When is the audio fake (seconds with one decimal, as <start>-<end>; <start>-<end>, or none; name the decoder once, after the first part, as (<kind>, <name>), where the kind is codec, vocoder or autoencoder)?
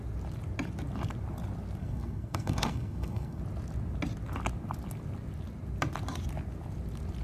1.8-3.4 (codec, SNAC)